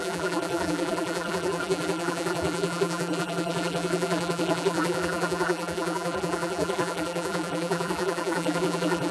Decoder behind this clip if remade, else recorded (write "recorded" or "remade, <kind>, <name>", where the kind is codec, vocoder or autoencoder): remade, vocoder, BigVGAN v2